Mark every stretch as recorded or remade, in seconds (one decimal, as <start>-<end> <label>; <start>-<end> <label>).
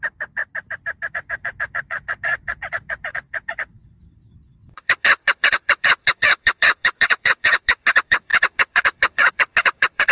0.0-0.4 remade; 0.4-1.1 recorded; 1.1-10.1 remade